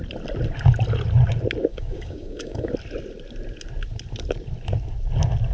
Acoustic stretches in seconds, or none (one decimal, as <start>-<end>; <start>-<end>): 0.0-1.7; 2.7-5.5